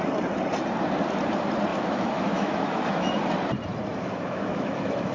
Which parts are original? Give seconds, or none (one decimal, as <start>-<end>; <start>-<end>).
0.0-1.7; 3.1-3.9